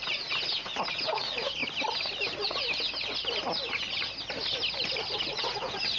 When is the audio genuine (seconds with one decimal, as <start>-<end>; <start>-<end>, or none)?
1.6-5.2